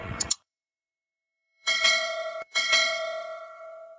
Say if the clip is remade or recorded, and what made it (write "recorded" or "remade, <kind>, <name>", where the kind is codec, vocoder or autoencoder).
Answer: remade, vocoder, WaveNeXt